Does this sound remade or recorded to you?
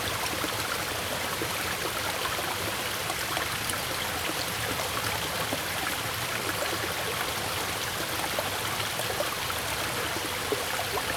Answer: recorded